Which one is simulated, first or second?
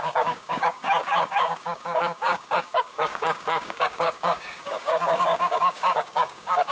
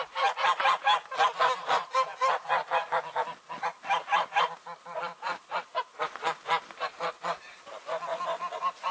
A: first